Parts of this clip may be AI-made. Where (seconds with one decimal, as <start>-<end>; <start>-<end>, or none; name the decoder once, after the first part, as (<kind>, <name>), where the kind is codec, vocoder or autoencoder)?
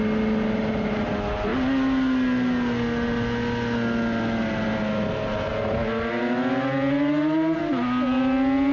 none